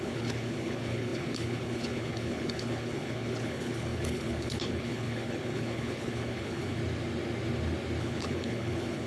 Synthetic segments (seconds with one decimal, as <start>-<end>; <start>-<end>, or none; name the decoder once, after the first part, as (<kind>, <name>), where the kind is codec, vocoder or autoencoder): 0.0-6.8 (codec, HILCodec); 8.0-9.1